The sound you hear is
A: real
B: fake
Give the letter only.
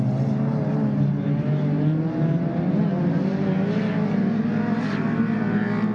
A